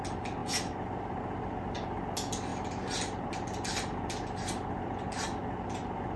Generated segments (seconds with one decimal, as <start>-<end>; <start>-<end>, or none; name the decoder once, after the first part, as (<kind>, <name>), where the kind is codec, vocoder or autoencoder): none